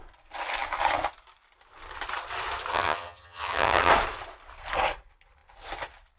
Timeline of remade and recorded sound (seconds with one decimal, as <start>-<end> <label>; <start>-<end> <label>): 0.0-2.7 recorded; 2.7-3.9 remade; 3.9-6.2 recorded